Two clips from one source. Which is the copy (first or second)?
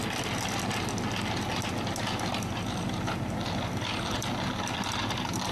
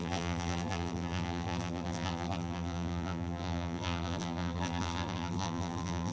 second